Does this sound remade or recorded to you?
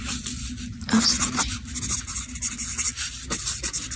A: recorded